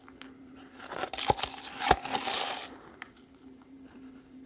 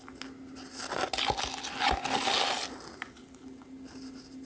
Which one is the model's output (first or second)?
first